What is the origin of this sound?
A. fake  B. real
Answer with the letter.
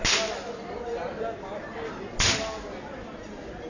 B